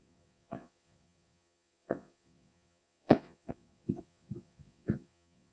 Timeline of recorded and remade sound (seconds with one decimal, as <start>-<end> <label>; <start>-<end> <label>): 0.0-5.5 remade